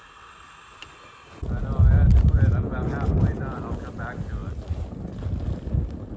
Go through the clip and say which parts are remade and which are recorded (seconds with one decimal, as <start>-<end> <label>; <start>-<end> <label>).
0.0-6.2 recorded